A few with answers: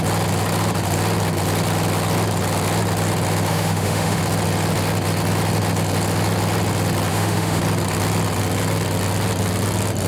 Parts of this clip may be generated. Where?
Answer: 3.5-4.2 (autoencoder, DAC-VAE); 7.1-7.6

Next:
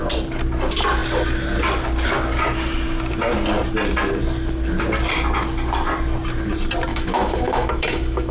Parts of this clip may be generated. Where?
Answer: 6.9-8.3 (autoencoder, DAC-VAE)

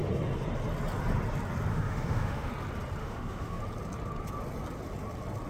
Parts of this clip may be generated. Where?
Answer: 1.7-2.5 (autoencoder, DAC-VAE); 3.0-3.6